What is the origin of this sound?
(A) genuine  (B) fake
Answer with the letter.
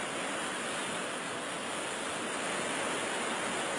A